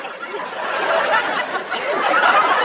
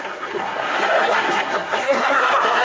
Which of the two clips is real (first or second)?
first